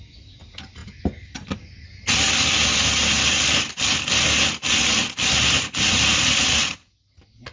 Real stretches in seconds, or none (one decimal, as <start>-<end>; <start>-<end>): 0.0-7.5